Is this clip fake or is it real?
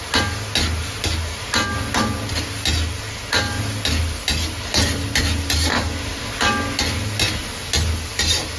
real